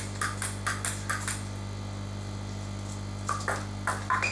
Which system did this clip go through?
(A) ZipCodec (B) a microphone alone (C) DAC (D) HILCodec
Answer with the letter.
B